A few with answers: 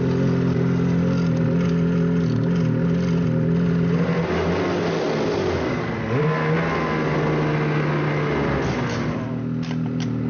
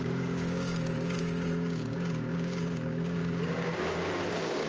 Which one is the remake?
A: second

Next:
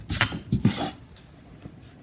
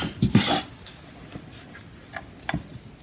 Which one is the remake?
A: first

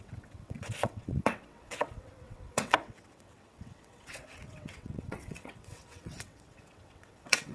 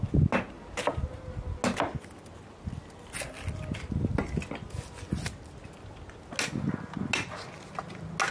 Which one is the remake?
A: first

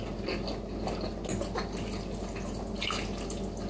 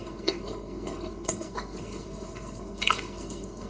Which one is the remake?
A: second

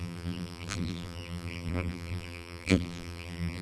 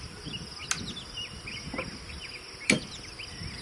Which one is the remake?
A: first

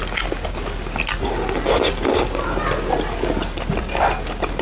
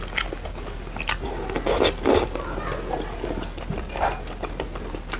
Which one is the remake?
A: first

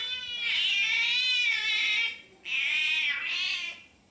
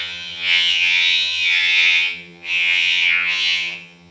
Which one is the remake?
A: second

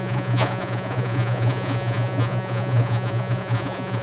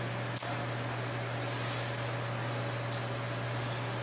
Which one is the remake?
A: first